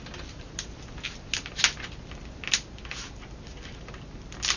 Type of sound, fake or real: real